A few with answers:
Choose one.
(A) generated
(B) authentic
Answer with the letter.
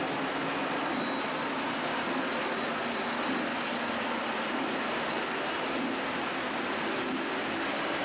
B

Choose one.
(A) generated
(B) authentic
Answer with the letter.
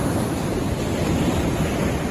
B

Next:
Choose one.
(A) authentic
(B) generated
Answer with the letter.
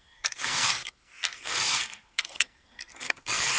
B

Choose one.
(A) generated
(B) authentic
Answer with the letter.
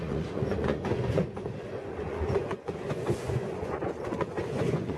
A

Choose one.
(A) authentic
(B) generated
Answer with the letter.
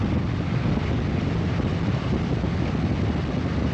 B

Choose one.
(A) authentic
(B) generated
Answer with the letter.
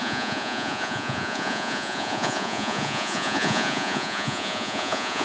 B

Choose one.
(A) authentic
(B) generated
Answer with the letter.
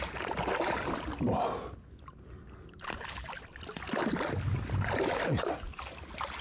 A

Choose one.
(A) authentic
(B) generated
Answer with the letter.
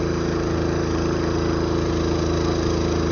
A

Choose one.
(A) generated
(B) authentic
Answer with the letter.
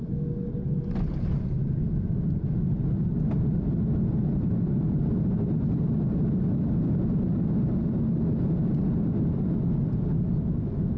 B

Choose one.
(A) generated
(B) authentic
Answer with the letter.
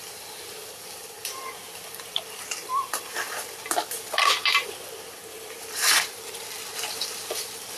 B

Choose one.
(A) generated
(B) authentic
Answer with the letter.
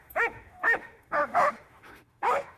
A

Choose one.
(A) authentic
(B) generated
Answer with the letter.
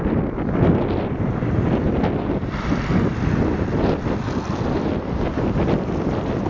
A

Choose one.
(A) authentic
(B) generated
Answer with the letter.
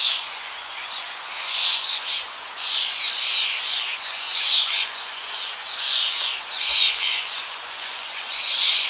B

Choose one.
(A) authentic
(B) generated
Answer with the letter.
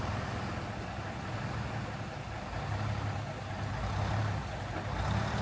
A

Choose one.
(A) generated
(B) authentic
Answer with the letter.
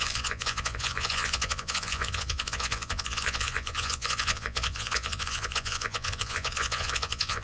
A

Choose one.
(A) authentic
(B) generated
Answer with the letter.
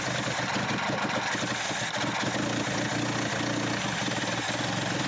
A